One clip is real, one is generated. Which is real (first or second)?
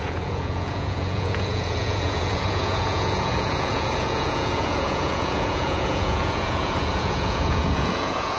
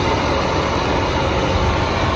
second